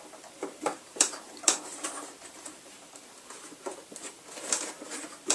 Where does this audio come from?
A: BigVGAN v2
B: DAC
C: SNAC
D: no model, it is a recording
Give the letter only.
A